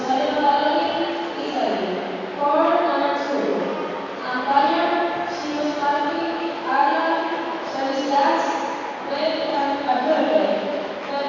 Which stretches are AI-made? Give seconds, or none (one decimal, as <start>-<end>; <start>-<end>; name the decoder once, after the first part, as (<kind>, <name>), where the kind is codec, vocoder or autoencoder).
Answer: 5.9-7.7 (autoencoder, DAC-VAE); 9.5-11.3